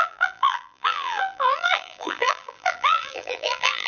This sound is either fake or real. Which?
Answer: fake